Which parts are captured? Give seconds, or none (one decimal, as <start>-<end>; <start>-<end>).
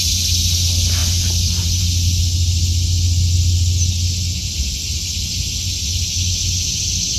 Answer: 0.0-7.2